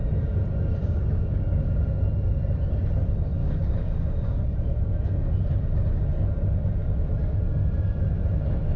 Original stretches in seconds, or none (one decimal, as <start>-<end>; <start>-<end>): 0.0-0.8; 1.8-3.4; 4.4-8.8